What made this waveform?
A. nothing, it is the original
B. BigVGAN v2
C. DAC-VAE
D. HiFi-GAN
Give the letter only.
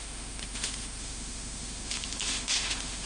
C